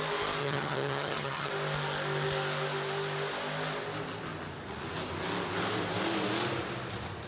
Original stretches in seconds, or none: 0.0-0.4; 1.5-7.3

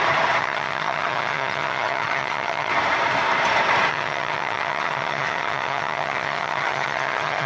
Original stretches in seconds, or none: 0.0-0.4; 2.7-3.9

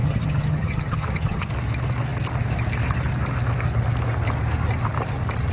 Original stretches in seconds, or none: 1.5-5.5

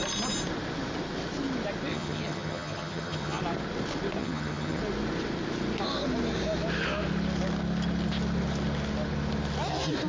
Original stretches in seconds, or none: 0.0-1.9; 3.4-4.2; 4.8-10.1